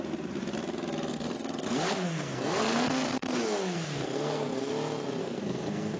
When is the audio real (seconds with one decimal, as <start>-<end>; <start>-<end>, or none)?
0.0-1.1; 4.7-5.2